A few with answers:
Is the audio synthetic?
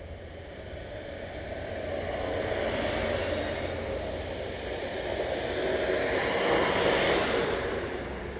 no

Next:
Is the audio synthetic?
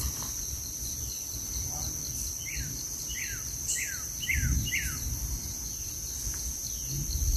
yes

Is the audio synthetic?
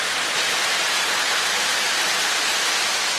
no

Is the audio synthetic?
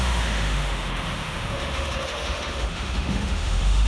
yes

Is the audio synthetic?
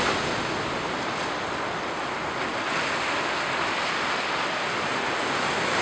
no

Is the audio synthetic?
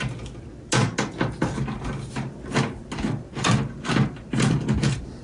no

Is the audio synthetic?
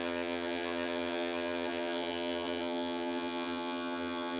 yes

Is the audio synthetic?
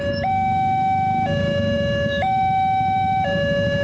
yes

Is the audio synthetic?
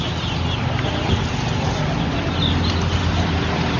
no